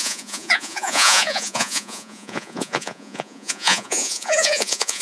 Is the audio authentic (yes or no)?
no